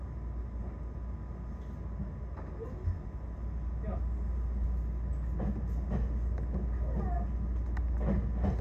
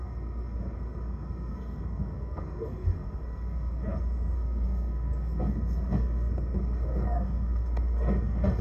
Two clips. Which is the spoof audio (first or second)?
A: second